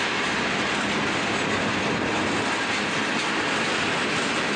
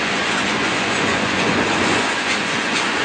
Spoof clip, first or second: second